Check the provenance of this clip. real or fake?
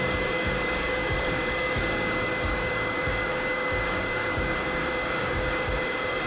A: fake